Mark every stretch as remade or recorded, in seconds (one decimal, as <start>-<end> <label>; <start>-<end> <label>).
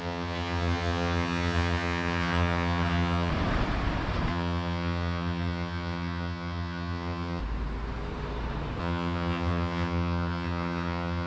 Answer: 0.0-3.3 remade; 3.3-4.3 recorded; 4.3-7.4 remade; 7.4-8.8 recorded; 8.8-11.3 remade